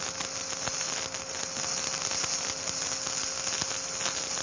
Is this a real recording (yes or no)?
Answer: yes